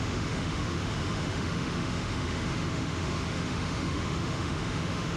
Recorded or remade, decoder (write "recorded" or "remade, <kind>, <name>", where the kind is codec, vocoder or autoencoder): remade, autoencoder, DAC-VAE